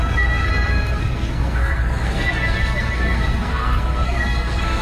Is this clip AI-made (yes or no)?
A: yes